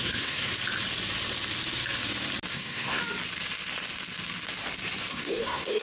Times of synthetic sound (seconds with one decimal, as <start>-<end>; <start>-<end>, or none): 0.0-0.5; 2.5-3.0; 5.1-5.8